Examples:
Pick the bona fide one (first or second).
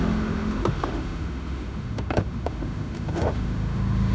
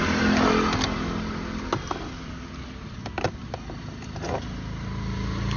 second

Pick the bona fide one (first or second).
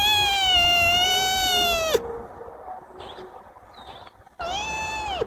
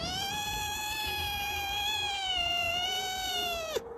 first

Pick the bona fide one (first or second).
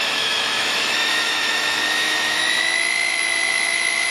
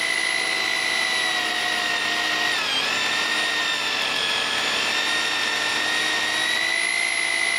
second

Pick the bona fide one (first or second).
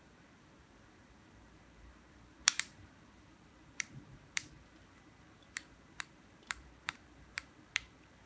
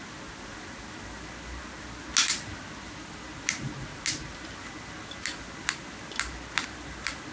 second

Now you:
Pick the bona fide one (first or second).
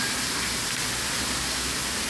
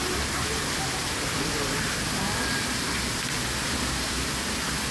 first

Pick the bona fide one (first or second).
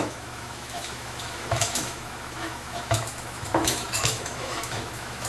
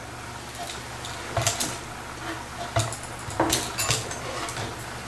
second